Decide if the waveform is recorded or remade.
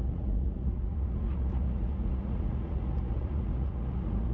remade